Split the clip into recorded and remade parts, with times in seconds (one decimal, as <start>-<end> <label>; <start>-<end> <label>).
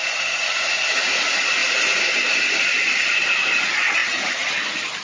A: 0.0-0.5 remade; 0.5-1.6 recorded; 1.6-3.1 remade; 3.1-4.0 recorded; 4.0-4.5 remade; 4.5-5.0 recorded